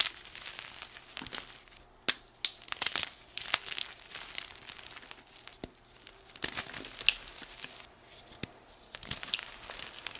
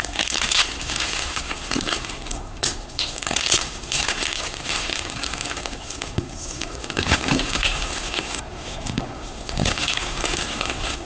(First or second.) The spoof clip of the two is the second